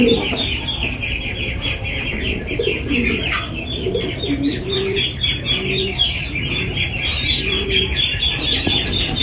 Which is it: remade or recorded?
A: remade